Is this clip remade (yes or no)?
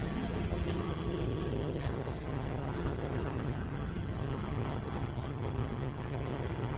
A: yes